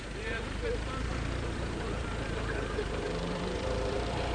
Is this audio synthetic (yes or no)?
yes